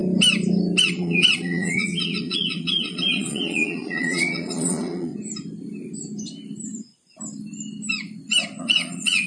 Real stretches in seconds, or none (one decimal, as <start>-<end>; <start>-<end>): 0.0-0.8; 5.1-8.6